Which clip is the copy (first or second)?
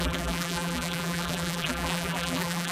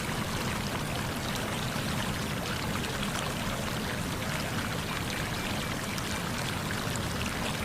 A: first